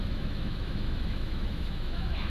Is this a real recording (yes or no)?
no